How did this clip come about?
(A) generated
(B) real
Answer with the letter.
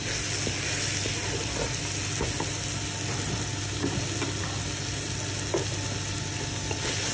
B